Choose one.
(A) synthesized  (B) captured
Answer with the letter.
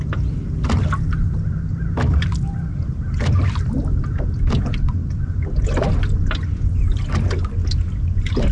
B